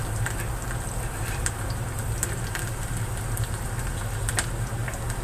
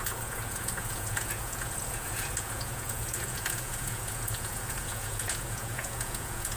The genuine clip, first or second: first